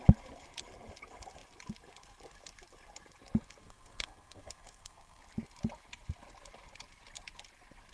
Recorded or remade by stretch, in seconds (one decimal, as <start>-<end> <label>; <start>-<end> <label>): 0.0-3.6 recorded; 3.6-5.2 remade; 5.2-7.9 recorded